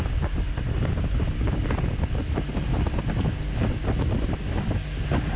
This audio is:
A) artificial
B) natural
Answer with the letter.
B